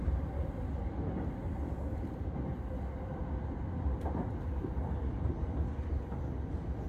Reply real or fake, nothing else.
real